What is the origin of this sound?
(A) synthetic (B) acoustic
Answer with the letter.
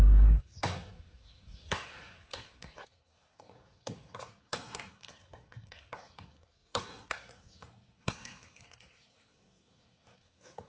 A